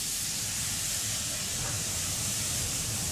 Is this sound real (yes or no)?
no